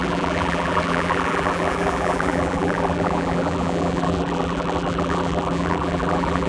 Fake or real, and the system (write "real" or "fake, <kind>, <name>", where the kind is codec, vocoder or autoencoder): fake, vocoder, BigVGAN v2